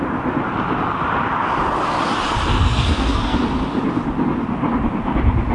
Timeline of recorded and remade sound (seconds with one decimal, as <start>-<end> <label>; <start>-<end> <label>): 0.0-2.6 recorded; 2.6-3.4 remade; 3.4-5.5 recorded